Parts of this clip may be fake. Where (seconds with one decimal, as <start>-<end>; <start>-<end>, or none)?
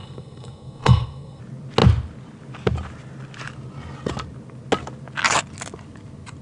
0.0-1.4